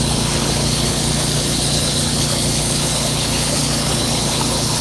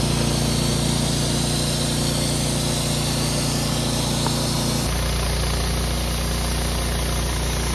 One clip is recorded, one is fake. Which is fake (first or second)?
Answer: first